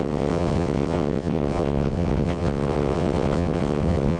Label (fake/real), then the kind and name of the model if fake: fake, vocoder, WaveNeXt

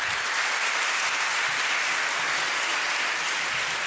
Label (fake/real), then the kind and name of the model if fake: real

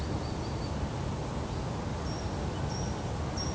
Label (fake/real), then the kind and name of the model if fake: real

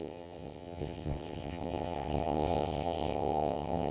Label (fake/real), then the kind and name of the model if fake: fake, vocoder, WaveNeXt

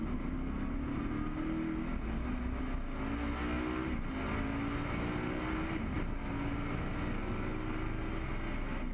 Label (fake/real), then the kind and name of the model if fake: real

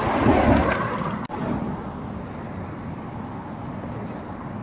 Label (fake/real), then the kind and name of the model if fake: real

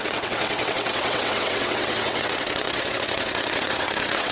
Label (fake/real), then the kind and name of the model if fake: fake, vocoder, WaveNeXt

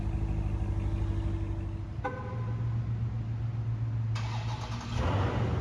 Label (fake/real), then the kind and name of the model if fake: real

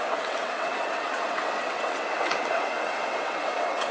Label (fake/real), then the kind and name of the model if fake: fake, vocoder, WaveNeXt